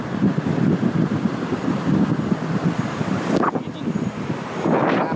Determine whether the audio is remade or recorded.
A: remade